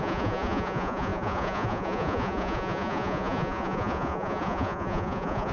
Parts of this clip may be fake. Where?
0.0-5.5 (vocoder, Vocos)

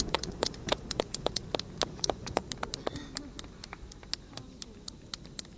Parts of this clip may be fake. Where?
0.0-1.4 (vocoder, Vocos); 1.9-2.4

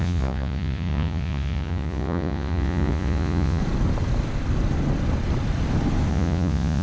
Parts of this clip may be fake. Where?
0.0-3.6 (vocoder, Vocos); 6.1-6.8

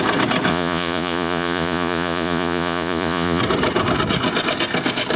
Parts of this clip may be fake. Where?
0.5-3.4 (vocoder, Vocos)

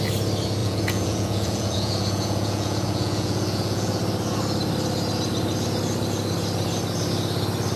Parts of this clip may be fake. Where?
0.6-4.0 (vocoder, Vocos)

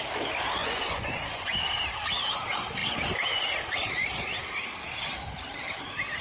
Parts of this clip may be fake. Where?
0.6-1.5 (vocoder, Vocos)

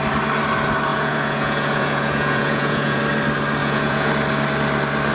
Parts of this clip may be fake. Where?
0.9-3.0 (vocoder, Vocos); 3.6-4.1